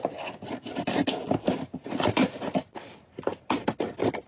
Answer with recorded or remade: recorded